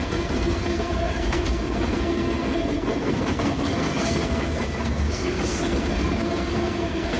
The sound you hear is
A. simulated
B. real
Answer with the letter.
A